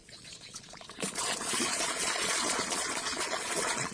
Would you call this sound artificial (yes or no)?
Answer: yes